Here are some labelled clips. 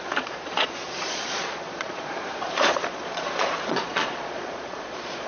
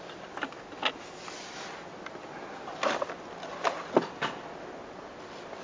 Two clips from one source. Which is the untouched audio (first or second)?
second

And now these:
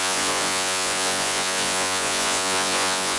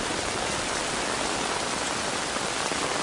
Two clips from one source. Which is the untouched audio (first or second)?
second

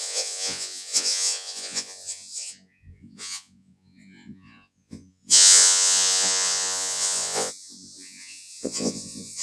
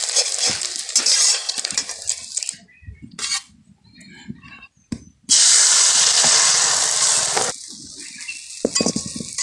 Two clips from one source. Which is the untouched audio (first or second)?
second